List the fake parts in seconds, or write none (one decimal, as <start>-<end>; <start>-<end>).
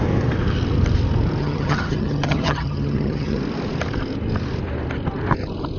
1.4-3.4